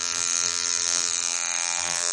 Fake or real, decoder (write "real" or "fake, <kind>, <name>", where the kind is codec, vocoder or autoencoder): fake, vocoder, BigVGAN v2